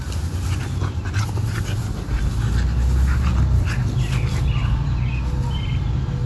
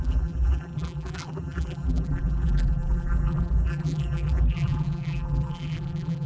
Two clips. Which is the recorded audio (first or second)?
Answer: first